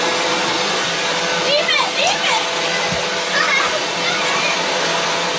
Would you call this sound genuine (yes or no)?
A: yes